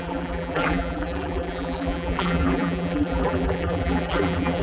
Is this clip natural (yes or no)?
no